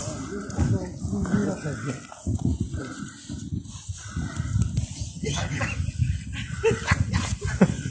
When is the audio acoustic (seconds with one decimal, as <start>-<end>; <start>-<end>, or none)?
0.0-5.1; 5.6-7.9